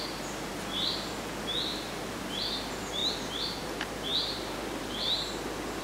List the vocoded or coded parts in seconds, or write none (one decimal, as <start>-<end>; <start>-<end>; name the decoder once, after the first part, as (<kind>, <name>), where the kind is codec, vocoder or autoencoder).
none